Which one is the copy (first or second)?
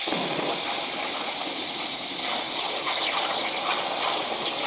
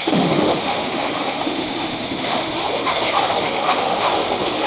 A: second